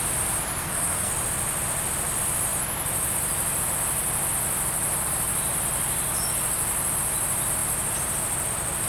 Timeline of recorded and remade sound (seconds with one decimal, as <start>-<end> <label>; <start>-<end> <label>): 0.0-0.6 recorded; 0.6-1.1 remade; 1.1-8.9 recorded